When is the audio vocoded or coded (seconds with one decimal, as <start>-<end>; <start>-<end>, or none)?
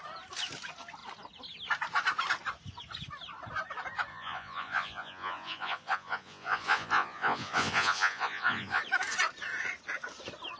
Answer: 4.1-8.8